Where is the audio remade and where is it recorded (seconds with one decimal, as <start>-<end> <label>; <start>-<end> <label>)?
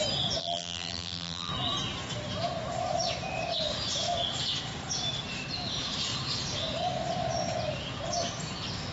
0.0-0.4 recorded; 0.4-1.5 remade; 1.5-8.9 recorded